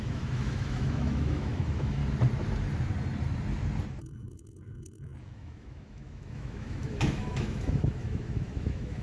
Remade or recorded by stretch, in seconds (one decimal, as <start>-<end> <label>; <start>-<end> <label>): 0.0-2.0 remade; 2.0-4.0 recorded; 4.0-9.0 remade